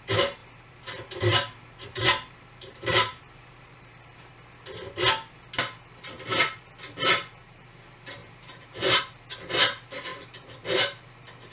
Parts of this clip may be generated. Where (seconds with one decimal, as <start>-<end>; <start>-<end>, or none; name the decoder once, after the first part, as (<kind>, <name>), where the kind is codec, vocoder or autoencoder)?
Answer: 0.4-4.3 (vocoder, BigVGAN v2); 8.2-9.0